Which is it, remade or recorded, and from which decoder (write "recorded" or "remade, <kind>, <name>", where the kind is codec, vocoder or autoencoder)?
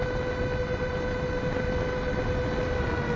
recorded